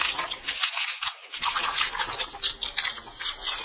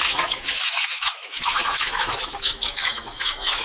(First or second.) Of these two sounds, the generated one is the second